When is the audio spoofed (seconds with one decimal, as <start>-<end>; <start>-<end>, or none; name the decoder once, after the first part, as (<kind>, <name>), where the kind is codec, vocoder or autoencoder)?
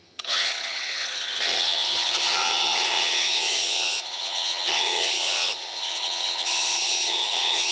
0.0-7.7 (vocoder, HiFi-GAN)